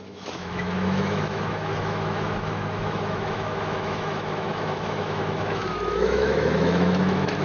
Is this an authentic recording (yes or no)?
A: no